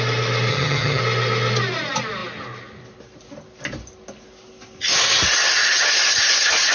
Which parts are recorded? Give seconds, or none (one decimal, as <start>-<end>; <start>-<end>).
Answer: 0.0-0.5; 1.0-6.7